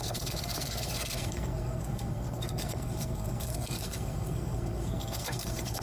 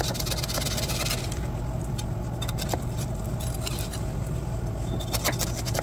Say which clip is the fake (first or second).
first